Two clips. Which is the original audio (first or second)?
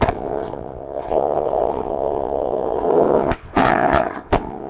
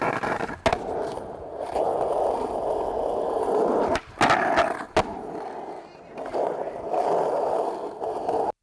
second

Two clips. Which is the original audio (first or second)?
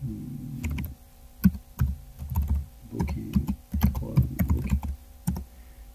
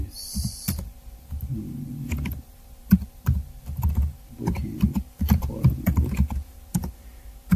first